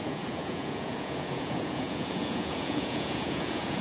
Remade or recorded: remade